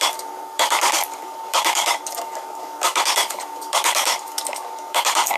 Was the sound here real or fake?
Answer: fake